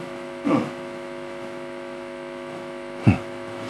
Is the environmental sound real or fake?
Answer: fake